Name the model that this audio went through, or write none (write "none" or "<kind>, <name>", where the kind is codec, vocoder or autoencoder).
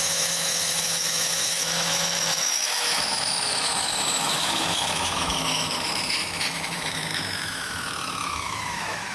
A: autoencoder, DAC-VAE